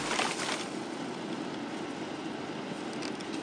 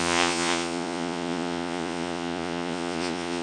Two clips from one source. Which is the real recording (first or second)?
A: first